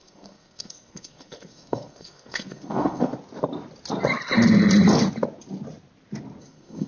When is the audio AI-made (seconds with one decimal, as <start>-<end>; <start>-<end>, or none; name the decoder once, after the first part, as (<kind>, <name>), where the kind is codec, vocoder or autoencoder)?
0.0-3.1 (codec, SNAC); 6.4-6.9